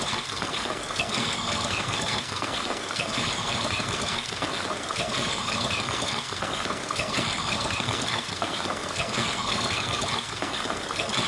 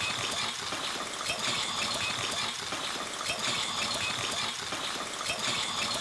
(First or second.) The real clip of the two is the second